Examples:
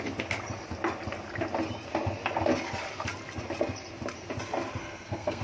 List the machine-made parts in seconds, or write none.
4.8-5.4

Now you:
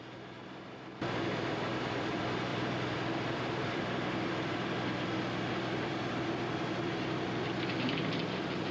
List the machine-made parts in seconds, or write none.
2.5-3.8

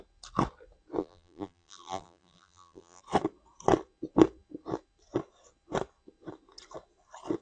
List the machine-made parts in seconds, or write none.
1.0-3.0

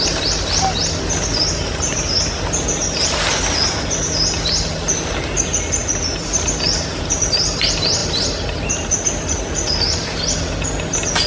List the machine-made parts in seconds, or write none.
none

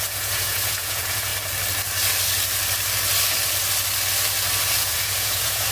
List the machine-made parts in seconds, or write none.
0.0-1.3; 4.7-5.7

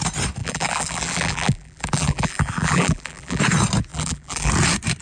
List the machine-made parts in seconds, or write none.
0.4-3.4; 3.9-4.5

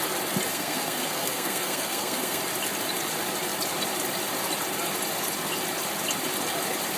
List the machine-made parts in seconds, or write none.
0.5-2.4

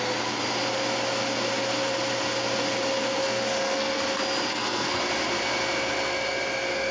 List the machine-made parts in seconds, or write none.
3.2-4.0; 4.5-5.0